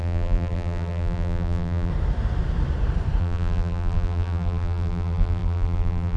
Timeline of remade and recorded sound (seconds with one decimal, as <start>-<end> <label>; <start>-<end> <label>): 0.0-1.9 remade; 1.9-3.2 recorded; 3.2-6.2 remade